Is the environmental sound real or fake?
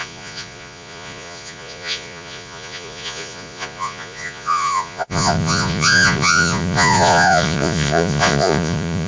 fake